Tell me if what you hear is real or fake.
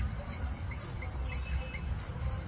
real